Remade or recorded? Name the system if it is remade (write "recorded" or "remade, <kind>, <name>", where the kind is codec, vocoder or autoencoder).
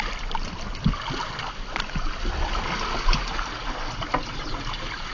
recorded